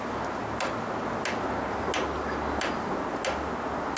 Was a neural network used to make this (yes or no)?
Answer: no